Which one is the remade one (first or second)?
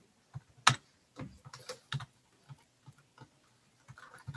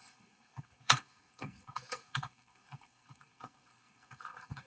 second